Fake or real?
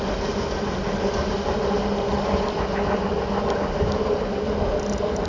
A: real